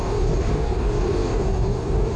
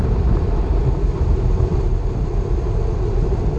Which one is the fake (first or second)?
first